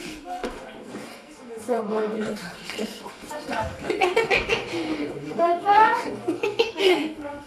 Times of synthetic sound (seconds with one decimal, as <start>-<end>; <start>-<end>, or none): 0.0-7.5